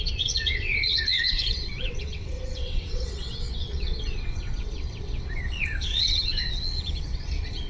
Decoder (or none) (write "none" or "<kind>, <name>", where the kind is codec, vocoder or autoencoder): vocoder, WaveNeXt